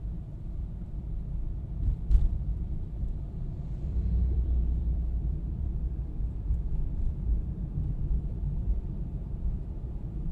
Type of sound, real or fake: fake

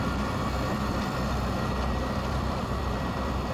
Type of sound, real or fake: fake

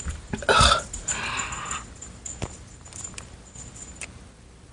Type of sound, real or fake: real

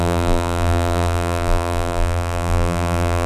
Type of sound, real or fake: fake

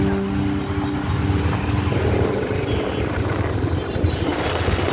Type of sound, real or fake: real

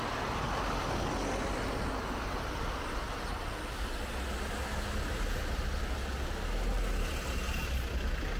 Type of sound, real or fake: real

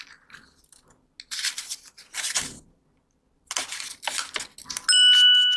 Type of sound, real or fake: real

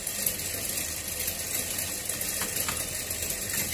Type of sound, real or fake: real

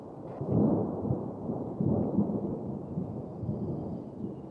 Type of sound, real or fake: fake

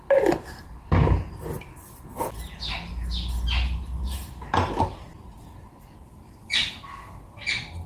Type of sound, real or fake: real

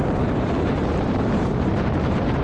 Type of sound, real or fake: fake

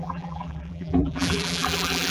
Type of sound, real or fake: fake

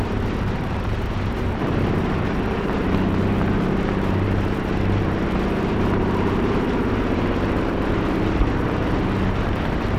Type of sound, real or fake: fake